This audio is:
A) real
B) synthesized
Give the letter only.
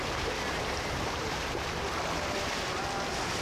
A